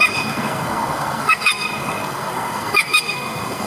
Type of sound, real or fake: fake